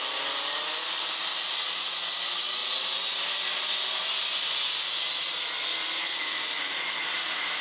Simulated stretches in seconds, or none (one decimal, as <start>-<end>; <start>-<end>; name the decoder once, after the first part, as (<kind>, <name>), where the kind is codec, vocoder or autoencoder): none